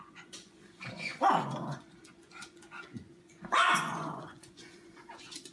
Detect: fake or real fake